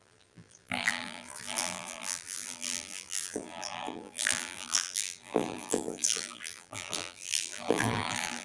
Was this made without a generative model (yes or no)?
no